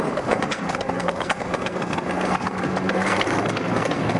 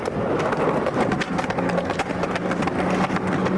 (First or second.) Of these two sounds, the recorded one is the second